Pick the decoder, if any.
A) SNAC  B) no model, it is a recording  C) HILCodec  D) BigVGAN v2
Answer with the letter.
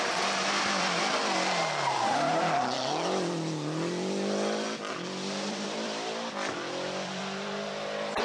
D